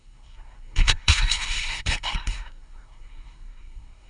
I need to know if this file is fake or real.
fake